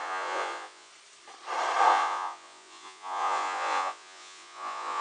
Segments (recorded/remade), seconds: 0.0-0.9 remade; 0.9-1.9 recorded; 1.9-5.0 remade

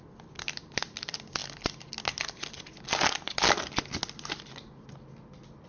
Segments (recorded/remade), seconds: 0.0-5.7 recorded

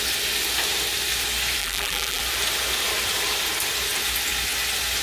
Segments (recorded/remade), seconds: 0.0-1.6 recorded; 1.6-2.2 remade; 2.2-5.0 recorded

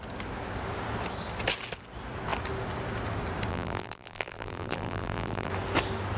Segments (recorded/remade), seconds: 0.0-3.5 recorded; 3.5-5.5 remade; 5.5-6.2 recorded

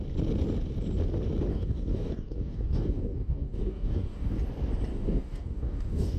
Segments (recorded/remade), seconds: 0.0-1.5 recorded; 1.5-4.4 remade; 4.4-4.9 recorded; 4.9-6.2 remade

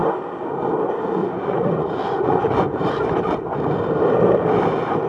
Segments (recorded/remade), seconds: 0.0-1.2 recorded; 1.2-2.8 remade; 2.8-5.1 recorded

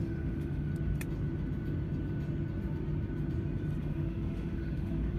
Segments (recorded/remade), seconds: 0.0-0.7 remade; 0.7-3.8 recorded; 3.8-5.2 remade